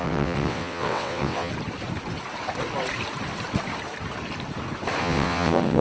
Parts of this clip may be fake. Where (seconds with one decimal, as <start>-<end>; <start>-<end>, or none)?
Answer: 0.0-1.5; 5.0-5.8